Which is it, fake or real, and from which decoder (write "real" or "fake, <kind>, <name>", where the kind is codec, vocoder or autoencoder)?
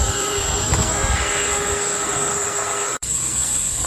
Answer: fake, codec, SNAC